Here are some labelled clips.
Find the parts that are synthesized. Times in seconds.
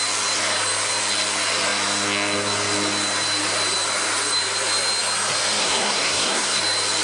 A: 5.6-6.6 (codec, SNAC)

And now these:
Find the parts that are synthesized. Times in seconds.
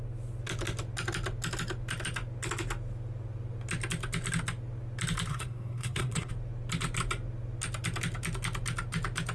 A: 5.3-6.3 (codec, SNAC)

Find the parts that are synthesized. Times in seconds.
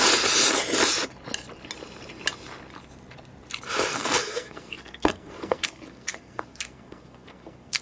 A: 3.9-7.8 (codec, SNAC)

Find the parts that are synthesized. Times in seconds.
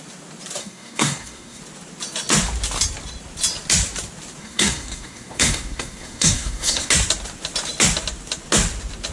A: 0.6-1.6 (codec, SNAC); 4.4-6.9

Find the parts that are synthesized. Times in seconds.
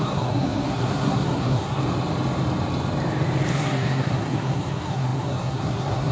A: 0.0-1.8 (codec, SNAC); 3.5-6.1